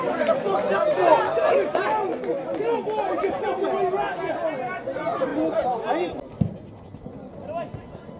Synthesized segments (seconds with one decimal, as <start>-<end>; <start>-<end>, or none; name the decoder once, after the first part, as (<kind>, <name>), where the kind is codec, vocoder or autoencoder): none